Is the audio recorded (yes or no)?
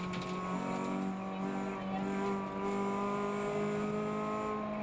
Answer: yes